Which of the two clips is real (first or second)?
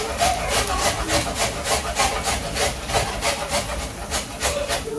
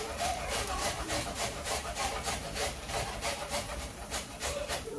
first